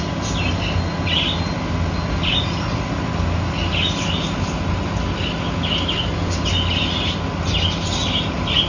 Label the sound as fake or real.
real